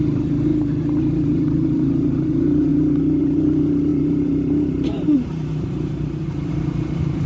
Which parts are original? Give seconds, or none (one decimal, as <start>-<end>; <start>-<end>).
0.5-1.1; 2.7-3.2